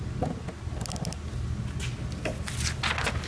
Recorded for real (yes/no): yes